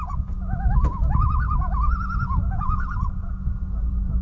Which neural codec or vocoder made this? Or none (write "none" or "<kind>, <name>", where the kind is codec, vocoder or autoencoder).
vocoder, Vocos